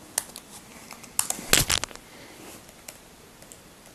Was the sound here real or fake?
real